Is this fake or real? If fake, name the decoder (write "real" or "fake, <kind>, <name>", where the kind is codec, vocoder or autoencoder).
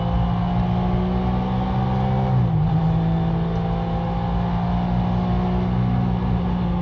real